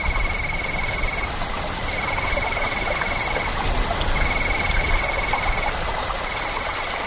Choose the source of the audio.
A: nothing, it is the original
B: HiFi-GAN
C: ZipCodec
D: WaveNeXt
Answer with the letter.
A